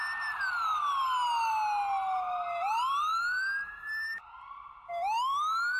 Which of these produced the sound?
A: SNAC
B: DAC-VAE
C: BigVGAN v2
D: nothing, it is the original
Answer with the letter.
D